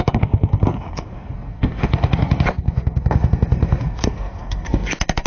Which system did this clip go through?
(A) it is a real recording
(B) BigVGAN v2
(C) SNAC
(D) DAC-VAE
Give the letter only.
C